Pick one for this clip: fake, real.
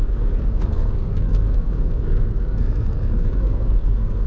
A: fake